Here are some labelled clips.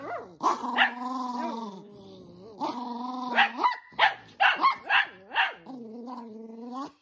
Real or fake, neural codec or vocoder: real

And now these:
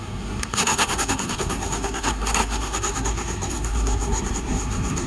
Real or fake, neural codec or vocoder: fake, codec, SNAC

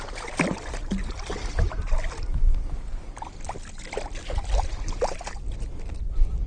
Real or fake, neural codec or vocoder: real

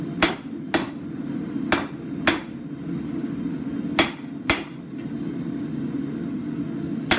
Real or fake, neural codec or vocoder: real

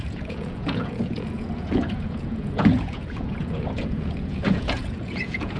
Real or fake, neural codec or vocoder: fake, vocoder, Vocos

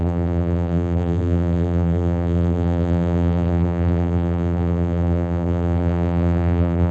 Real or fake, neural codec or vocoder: fake, vocoder, BigVGAN v2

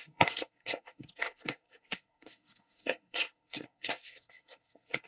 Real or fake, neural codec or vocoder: fake, codec, SNAC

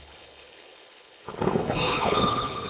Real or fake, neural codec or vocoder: fake, codec, HILCodec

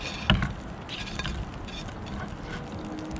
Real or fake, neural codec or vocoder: real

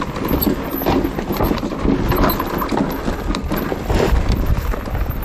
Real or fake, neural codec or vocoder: real